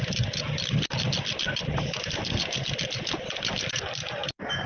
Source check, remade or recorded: recorded